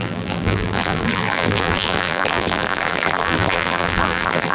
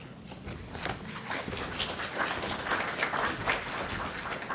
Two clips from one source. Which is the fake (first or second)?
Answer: first